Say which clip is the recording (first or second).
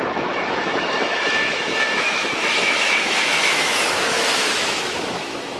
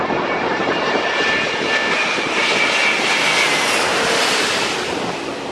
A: second